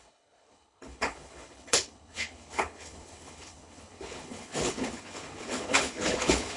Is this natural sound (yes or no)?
no